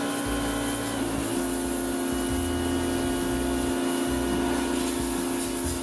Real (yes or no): yes